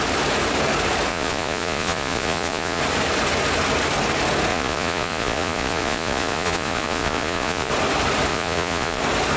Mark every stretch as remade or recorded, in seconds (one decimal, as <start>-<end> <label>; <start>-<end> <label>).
0.0-1.1 recorded; 1.1-2.8 remade; 2.8-4.5 recorded; 4.5-7.7 remade; 7.7-8.3 recorded; 8.3-9.0 remade; 9.0-9.4 recorded